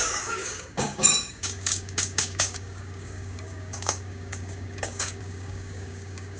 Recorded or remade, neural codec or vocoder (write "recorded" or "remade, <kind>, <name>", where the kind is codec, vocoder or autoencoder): remade, codec, DAC